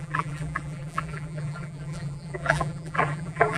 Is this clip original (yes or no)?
no